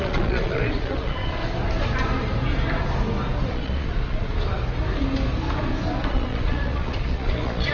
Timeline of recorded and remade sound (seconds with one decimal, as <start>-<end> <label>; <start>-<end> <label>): 0.0-1.4 remade; 1.4-3.5 recorded; 3.5-4.5 remade; 4.5-6.1 recorded; 6.1-7.7 remade